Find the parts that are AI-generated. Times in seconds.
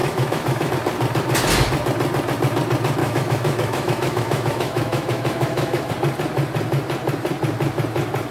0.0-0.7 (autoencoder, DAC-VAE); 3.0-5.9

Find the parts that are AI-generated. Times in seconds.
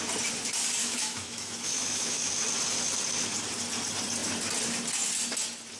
0.8-2.3 (autoencoder, DAC-VAE)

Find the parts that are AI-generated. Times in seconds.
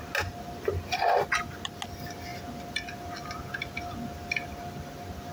none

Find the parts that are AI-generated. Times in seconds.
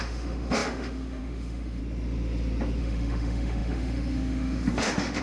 0.0-1.8 (autoencoder, DAC-VAE); 2.8-5.2